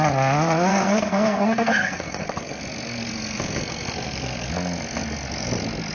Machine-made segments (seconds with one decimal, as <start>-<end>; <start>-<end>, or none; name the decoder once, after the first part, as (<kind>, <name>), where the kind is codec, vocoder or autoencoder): 0.7-2.6 (codec, SNAC); 3.0-4.5